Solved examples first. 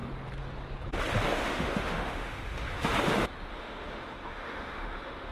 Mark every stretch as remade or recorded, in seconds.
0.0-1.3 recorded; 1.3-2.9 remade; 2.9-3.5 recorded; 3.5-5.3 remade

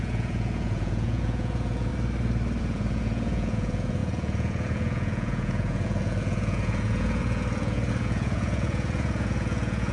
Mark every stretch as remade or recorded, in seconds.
0.0-1.9 remade; 1.9-2.6 recorded; 2.6-9.9 remade

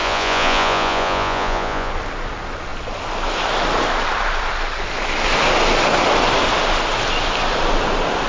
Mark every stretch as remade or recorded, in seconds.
0.0-1.9 remade; 1.9-8.3 recorded

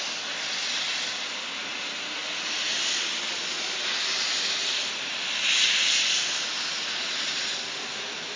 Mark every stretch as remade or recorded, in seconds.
0.0-8.4 recorded

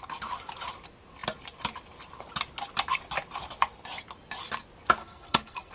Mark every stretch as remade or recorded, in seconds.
0.0-5.0 recorded; 5.0-5.7 remade

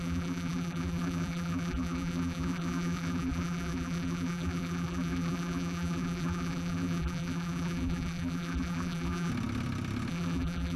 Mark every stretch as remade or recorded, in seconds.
0.0-9.3 remade; 9.3-10.1 recorded; 10.1-10.8 remade

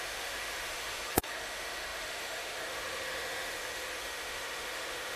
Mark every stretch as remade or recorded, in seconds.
0.0-5.2 remade

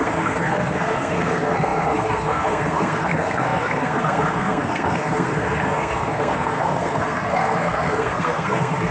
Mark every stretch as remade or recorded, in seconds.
0.0-8.9 remade